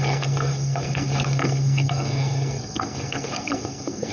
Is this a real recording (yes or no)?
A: no